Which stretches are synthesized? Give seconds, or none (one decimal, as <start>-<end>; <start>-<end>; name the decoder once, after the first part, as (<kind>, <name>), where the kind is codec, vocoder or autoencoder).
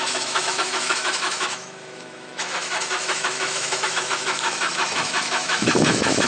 0.0-6.3 (autoencoder, DAC-VAE)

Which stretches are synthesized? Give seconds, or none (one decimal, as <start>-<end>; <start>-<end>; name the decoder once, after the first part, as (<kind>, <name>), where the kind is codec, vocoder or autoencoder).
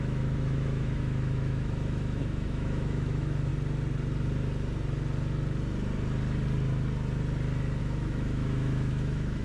0.0-3.5 (autoencoder, DAC-VAE); 7.8-9.4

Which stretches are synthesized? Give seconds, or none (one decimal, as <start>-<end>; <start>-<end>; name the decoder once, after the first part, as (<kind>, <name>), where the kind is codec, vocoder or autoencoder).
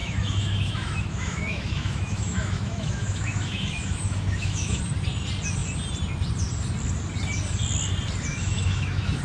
0.0-4.8 (autoencoder, DAC-VAE); 8.3-9.2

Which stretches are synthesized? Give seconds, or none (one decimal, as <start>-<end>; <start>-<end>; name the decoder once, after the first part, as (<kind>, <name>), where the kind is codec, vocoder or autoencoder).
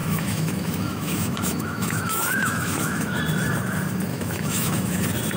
0.0-3.2 (autoencoder, DAC-VAE); 4.1-5.0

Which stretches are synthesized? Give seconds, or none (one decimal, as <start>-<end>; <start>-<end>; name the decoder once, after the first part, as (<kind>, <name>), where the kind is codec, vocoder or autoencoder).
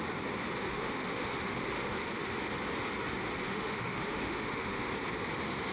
0.7-2.4 (autoencoder, DAC-VAE); 3.4-4.9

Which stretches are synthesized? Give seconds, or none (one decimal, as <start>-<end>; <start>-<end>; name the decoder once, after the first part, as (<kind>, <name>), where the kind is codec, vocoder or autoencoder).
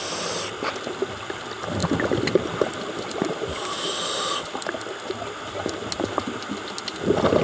none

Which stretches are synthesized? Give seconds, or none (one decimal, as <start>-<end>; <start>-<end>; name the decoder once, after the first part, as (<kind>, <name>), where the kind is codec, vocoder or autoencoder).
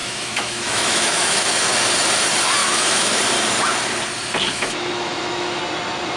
0.0-1.6 (autoencoder, DAC-VAE); 2.6-3.2; 4.5-5.6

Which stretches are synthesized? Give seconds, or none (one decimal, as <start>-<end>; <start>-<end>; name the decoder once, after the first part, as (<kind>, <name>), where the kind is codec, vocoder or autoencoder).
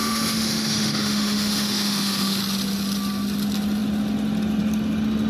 0.0-2.4 (autoencoder, DAC-VAE)